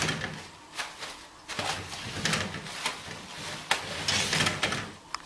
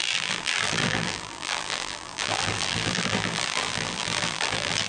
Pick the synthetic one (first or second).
second